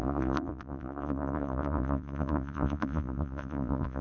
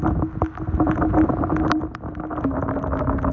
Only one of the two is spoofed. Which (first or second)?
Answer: first